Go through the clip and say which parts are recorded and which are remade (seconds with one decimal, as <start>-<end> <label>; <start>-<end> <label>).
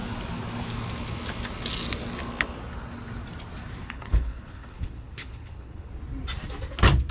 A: 0.0-3.8 recorded; 3.8-5.9 remade; 5.9-7.1 recorded